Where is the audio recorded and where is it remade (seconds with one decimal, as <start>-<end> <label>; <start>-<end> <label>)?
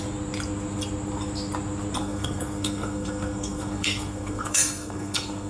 0.0-2.0 recorded; 2.0-5.5 remade